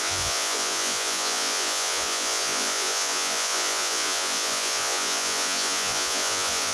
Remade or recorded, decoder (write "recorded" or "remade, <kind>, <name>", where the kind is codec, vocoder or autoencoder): remade, vocoder, Vocos